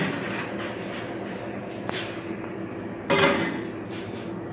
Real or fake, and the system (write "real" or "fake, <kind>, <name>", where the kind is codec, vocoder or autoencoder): real